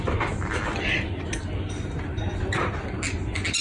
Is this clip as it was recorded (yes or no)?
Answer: yes